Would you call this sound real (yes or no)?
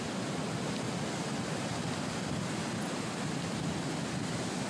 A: yes